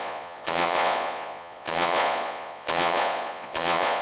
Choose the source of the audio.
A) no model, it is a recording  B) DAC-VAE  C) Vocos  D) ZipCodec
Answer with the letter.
C